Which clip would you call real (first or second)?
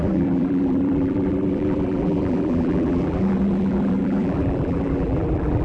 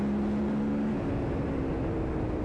second